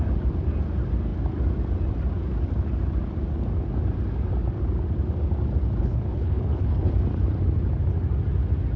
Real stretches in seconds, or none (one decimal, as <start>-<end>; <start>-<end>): 0.0-5.8; 6.9-8.8